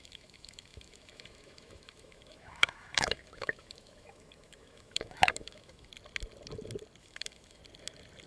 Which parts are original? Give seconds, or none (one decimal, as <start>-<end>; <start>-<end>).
5.9-7.0; 7.6-8.3